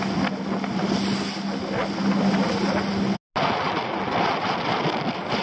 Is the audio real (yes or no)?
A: yes